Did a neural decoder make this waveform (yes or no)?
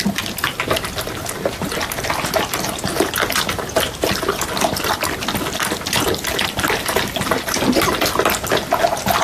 no